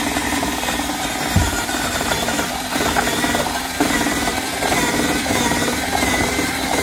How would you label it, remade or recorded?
remade